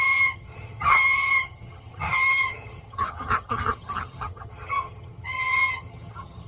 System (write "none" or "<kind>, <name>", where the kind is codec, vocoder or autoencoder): vocoder, HiFi-GAN